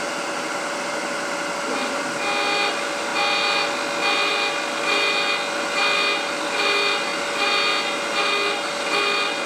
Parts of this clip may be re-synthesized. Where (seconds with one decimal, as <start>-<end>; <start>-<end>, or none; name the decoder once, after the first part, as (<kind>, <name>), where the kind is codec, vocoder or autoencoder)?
none